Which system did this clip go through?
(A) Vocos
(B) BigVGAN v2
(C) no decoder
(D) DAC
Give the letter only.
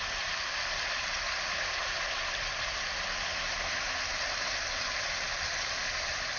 B